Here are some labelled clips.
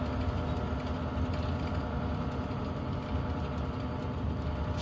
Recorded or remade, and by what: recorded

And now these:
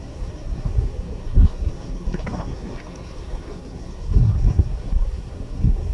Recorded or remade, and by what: remade, codec, SNAC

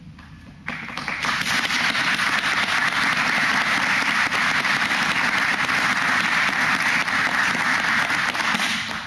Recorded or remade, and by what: recorded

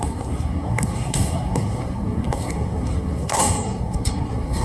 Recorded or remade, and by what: remade, codec, SNAC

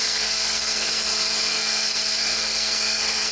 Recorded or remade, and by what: remade, codec, SNAC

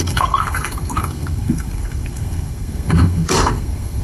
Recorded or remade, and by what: remade, codec, SNAC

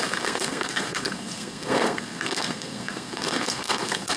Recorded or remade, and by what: remade, codec, SNAC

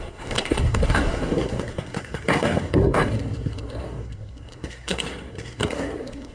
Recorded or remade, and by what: remade, codec, SNAC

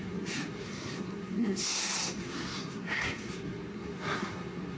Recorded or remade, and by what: remade, codec, SNAC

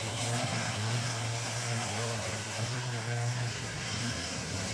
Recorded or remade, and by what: remade, codec, SNAC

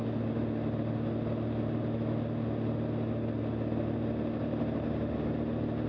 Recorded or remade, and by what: recorded